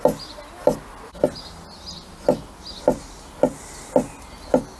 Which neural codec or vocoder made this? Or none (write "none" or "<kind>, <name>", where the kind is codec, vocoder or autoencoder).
none